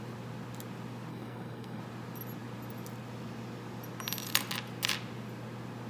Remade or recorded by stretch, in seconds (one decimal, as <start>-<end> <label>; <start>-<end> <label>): 0.0-1.1 recorded; 1.1-1.8 remade; 1.8-5.9 recorded